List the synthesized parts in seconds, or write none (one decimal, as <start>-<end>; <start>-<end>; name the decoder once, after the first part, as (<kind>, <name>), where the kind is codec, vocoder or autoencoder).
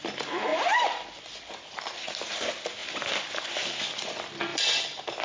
4.5-5.2 (vocoder, BigVGAN v2)